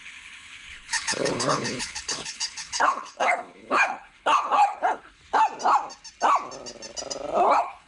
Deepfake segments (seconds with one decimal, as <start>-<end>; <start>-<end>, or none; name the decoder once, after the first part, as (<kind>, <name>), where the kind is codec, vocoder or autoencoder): 0.0-5.2 (codec, HILCodec); 7.5-7.9

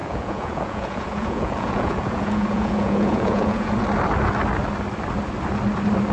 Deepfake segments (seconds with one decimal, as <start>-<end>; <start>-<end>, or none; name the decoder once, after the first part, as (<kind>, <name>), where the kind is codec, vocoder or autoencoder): 0.0-3.7 (vocoder, Vocos)